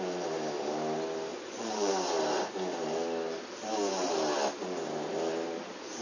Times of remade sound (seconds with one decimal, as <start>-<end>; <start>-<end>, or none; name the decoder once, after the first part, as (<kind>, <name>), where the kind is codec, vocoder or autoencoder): 1.3-1.9 (vocoder, Vocos)

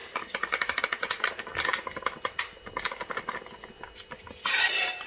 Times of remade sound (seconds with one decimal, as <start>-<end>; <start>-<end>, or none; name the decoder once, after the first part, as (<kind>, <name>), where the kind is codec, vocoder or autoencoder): 0.0-1.5 (vocoder, BigVGAN v2); 4.5-5.1

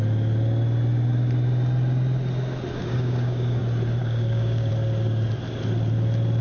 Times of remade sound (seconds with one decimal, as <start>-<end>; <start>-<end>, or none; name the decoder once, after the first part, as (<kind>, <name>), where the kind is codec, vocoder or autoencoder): 2.8-3.6 (codec, DAC); 4.0-4.7

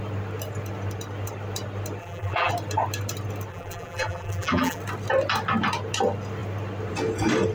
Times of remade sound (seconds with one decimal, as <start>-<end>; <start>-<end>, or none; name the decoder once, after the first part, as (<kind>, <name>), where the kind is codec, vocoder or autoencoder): 2.0-2.5 (vocoder, BigVGAN v2); 3.5-4.8

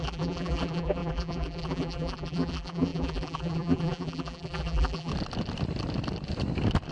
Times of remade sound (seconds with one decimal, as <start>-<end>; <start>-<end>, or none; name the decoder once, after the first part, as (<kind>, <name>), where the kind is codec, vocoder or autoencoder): 0.0-5.1 (vocoder, BigVGAN v2)

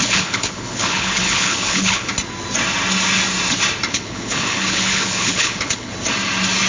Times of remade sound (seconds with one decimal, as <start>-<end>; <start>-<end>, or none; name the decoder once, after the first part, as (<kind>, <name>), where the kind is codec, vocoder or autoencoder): 0.0-2.1 (codec, HILCodec); 3.9-5.9

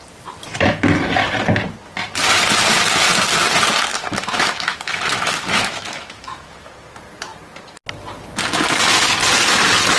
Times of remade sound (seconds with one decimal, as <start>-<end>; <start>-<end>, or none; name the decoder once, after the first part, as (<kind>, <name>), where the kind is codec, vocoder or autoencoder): 3.9-6.7 (autoencoder, DAC-VAE)